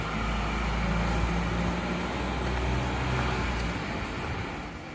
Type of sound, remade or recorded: recorded